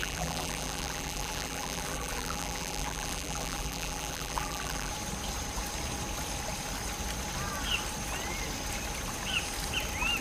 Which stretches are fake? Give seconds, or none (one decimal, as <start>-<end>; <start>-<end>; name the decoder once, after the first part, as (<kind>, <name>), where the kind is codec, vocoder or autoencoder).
0.0-4.9 (vocoder, BigVGAN v2)